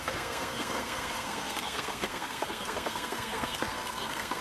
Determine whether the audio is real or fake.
fake